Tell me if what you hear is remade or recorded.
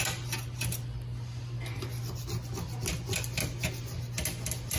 recorded